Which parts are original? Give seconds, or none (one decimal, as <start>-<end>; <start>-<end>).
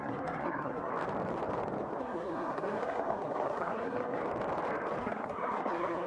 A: 0.9-2.0; 4.2-5.0